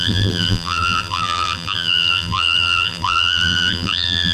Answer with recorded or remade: remade